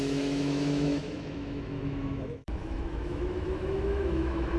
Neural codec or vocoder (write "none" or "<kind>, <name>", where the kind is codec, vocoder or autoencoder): autoencoder, DAC-VAE